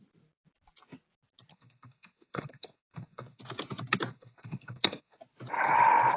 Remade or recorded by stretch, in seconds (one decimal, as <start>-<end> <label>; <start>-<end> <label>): 0.0-1.5 recorded; 1.5-3.4 remade; 3.4-4.1 recorded; 4.1-5.2 remade; 5.2-6.2 recorded